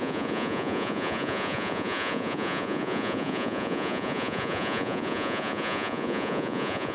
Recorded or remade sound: remade